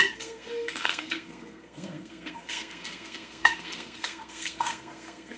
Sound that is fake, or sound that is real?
fake